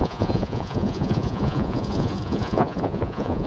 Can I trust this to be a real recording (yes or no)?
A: no